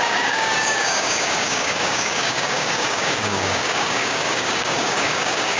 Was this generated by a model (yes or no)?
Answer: yes